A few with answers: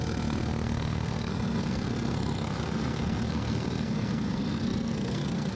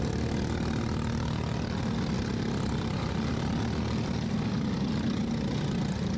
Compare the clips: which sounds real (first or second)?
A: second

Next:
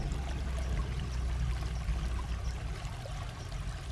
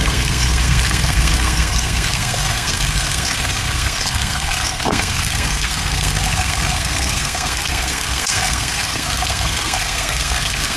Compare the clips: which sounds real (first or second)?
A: first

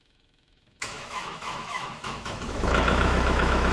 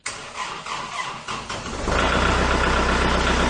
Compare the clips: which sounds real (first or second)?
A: second